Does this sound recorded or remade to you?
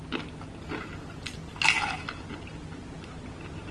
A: recorded